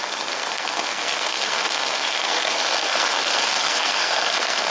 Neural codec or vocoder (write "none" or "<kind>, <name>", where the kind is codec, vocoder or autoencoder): codec, SNAC